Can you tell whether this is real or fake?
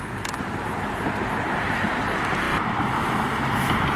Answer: real